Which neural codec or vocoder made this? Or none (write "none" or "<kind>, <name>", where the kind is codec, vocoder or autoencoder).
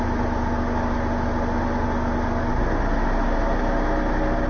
none